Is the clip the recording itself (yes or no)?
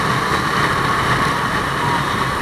yes